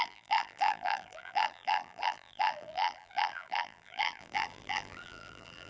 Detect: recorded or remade remade